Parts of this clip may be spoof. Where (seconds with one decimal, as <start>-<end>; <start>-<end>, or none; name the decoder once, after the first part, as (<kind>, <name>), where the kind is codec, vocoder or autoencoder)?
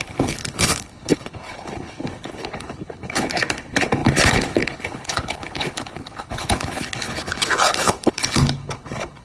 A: 0.0-9.2 (codec, HILCodec)